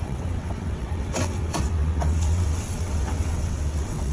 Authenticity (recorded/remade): remade